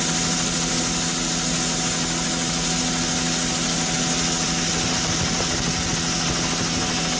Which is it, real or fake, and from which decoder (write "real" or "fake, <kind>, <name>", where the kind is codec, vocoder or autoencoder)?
real